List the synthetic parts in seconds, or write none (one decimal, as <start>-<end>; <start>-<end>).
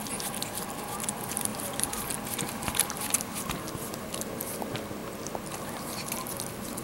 1.5-2.1